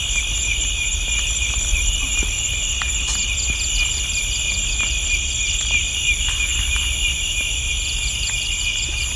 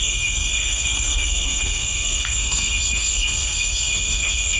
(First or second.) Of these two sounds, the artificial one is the second